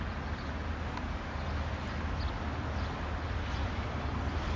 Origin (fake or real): real